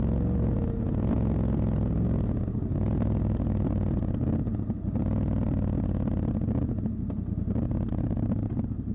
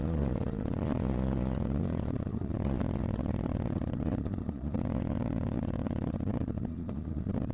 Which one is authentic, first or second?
first